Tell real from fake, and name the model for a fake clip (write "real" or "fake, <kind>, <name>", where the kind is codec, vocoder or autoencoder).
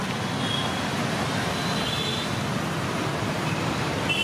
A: fake, vocoder, BigVGAN v2